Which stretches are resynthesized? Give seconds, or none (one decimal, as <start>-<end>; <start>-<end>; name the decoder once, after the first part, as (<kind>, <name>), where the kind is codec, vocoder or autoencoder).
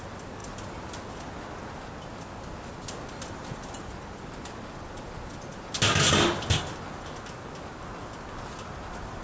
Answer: none